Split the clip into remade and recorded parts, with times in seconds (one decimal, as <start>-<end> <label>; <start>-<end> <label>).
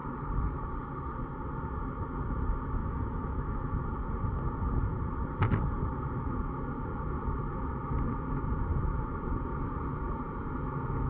0.0-2.8 recorded; 2.8-3.7 remade; 3.7-11.1 recorded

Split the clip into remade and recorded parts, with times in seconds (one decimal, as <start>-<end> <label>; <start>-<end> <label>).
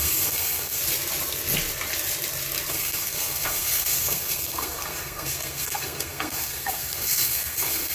0.0-0.8 remade; 0.8-2.7 recorded; 2.7-7.9 remade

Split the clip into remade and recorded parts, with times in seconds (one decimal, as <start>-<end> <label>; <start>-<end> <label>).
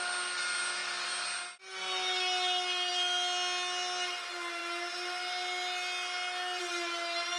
0.0-7.4 recorded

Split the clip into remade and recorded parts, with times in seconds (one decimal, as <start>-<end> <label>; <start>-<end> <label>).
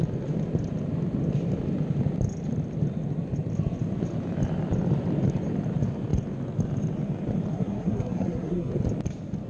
0.0-7.5 recorded; 7.5-8.7 remade; 8.7-9.5 recorded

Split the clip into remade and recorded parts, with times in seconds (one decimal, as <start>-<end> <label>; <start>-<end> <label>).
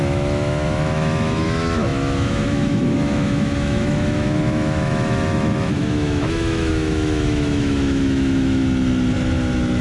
0.0-8.6 remade; 8.6-9.8 recorded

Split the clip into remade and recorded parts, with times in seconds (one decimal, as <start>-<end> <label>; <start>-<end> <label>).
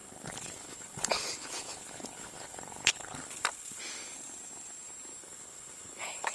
0.0-3.8 remade; 3.8-5.2 recorded; 5.2-6.3 remade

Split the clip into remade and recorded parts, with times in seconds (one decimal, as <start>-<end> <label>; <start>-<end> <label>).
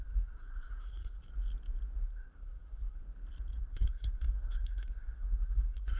0.0-1.2 remade; 1.2-2.0 recorded; 2.0-3.0 remade; 3.0-3.6 recorded; 3.6-6.0 remade